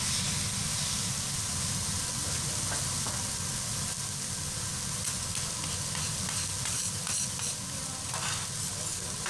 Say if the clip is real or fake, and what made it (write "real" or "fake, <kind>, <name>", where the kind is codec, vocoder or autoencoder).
real